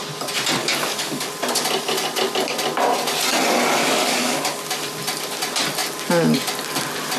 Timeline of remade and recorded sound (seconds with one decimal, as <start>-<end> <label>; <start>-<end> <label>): 0.0-0.6 recorded; 0.6-1.3 remade; 1.3-3.8 recorded; 3.8-4.6 remade; 4.6-7.2 recorded